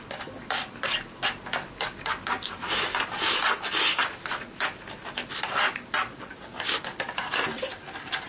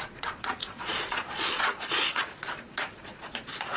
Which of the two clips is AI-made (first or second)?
second